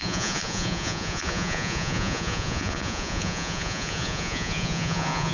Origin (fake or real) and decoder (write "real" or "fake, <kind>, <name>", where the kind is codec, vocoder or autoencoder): fake, vocoder, Vocos